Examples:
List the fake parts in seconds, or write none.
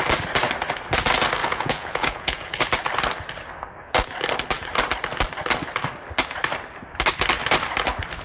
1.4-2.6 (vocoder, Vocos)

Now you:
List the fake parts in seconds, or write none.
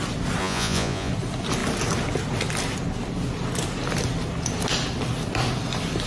0.4-1.1 (vocoder, Vocos)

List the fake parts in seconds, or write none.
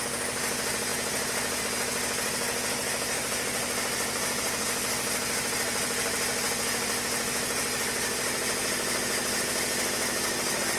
none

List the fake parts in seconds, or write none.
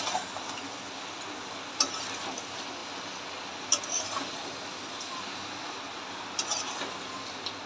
none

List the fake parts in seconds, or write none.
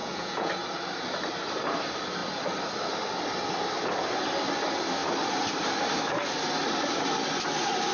0.0-0.5 (vocoder, Vocos)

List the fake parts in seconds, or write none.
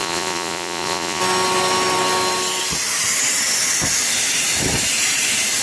0.0-1.2 (vocoder, Vocos)